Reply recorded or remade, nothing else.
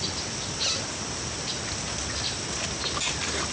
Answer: recorded